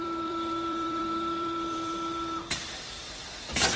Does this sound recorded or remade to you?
remade